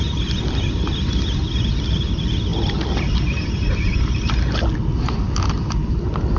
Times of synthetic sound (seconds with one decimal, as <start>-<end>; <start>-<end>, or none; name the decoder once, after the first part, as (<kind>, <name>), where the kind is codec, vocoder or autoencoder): none